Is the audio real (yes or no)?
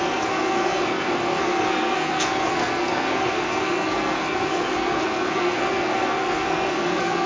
no